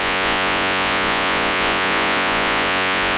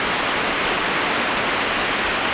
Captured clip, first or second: second